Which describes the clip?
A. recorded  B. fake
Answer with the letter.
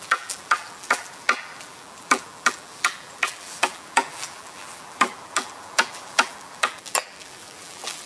B